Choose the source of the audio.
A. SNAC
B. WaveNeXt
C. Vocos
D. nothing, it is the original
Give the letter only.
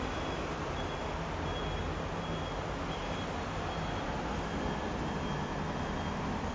D